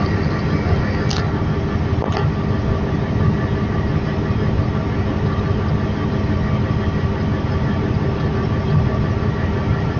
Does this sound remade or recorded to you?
recorded